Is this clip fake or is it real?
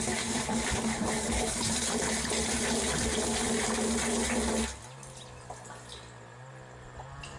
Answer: real